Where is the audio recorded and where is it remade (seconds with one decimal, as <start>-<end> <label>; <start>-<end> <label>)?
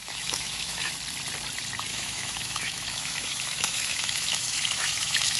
0.0-0.9 remade; 0.9-1.9 recorded; 1.9-5.4 remade